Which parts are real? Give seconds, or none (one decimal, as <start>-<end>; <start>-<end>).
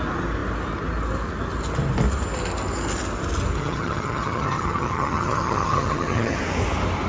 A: 0.0-3.6; 6.4-7.1